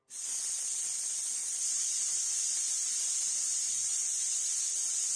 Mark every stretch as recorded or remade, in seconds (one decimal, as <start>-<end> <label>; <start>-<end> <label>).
0.0-5.2 recorded